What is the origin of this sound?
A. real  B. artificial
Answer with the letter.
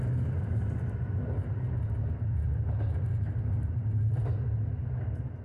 A